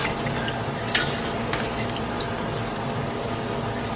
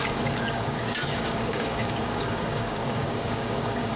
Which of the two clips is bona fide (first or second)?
first